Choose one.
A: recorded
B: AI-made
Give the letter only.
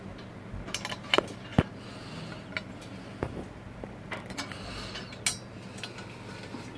A